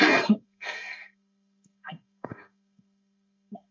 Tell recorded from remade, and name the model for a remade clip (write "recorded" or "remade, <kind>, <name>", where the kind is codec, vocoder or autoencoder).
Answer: remade, codec, SNAC